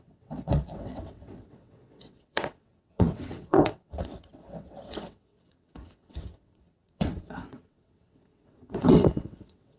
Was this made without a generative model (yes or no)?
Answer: no